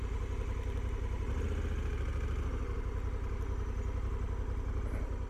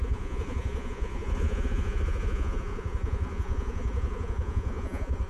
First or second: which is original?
first